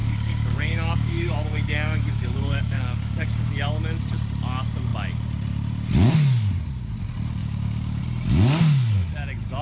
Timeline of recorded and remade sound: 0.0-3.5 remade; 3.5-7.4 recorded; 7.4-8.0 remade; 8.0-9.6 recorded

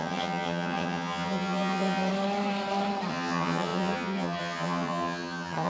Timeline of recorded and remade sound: 0.0-2.1 remade; 2.1-3.1 recorded; 3.1-5.7 remade

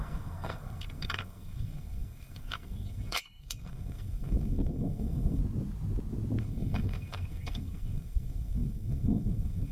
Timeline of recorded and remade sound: 0.0-5.4 remade; 5.4-6.4 recorded; 6.4-9.7 remade

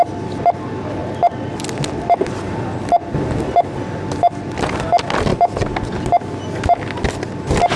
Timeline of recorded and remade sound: 0.0-7.8 recorded

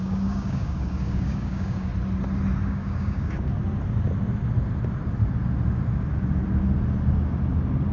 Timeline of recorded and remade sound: 0.0-1.9 remade; 1.9-2.7 recorded; 2.7-3.5 remade; 3.5-7.9 recorded

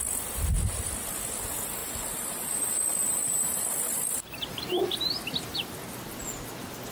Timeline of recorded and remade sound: 0.0-1.8 recorded; 1.8-5.7 remade; 5.7-6.9 recorded